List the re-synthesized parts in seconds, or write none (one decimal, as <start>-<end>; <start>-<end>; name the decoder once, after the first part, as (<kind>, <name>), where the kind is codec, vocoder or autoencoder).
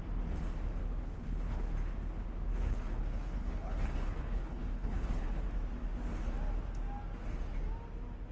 0.8-1.7 (codec, HILCodec); 2.5-5.4